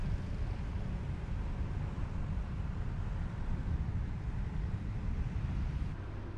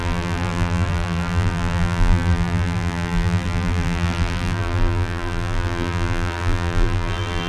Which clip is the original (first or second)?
first